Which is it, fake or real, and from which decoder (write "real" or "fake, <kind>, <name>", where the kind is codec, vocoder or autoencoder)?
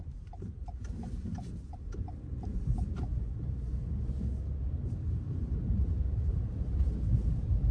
fake, vocoder, BigVGAN v2